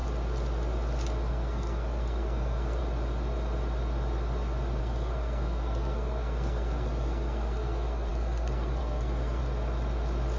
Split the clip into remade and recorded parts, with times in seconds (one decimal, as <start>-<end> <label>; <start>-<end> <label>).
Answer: 0.0-1.3 recorded; 1.3-2.8 remade; 2.8-4.8 recorded; 4.8-9.4 remade; 9.4-10.4 recorded

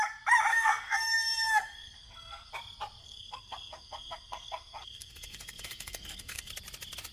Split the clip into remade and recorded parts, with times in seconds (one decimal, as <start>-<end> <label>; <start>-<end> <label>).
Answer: 0.0-0.5 recorded; 0.5-2.5 remade; 2.5-3.0 recorded; 3.0-6.5 remade; 6.5-7.1 recorded